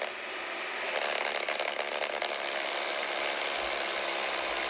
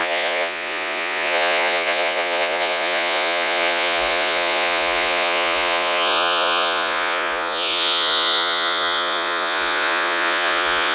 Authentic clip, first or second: first